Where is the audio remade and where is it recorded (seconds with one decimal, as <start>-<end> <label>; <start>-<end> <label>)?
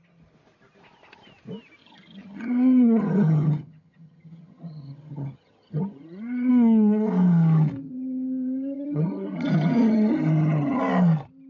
0.0-1.8 recorded; 1.8-6.5 remade; 6.5-7.8 recorded; 7.8-10.8 remade; 10.8-11.5 recorded